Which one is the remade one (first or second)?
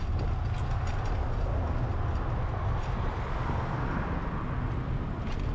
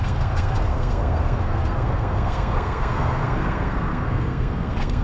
second